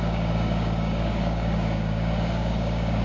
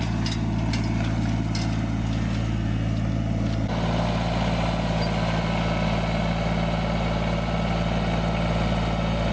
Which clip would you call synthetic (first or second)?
first